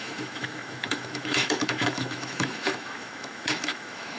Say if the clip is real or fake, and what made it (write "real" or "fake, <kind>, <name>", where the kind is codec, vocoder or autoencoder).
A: fake, autoencoder, DAC-VAE